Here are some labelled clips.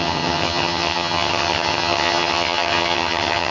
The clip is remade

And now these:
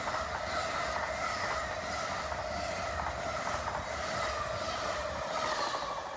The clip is recorded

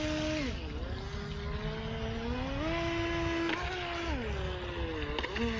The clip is recorded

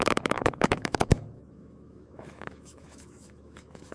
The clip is remade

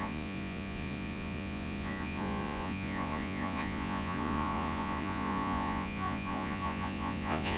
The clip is remade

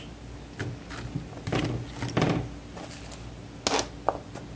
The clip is recorded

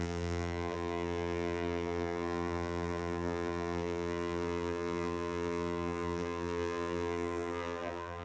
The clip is remade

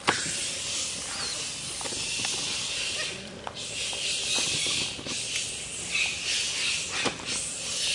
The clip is recorded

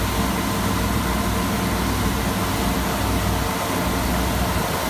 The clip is recorded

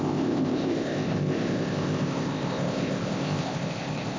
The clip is remade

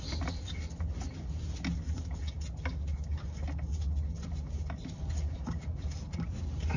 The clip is recorded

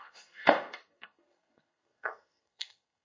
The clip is remade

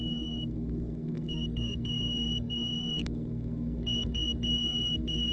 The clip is remade